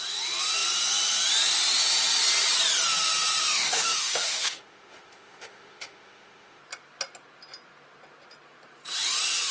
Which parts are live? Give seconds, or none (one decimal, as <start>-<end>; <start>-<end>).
0.0-3.4; 6.6-9.5